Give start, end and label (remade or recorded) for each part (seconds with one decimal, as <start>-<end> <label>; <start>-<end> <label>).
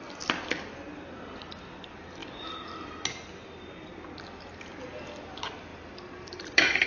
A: 0.0-5.7 recorded; 5.7-6.9 remade